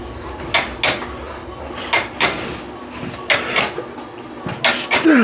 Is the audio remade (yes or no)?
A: no